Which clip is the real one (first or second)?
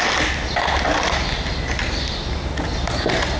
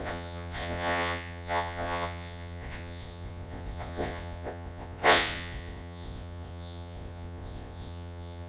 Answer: first